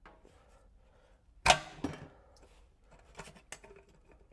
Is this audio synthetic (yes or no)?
no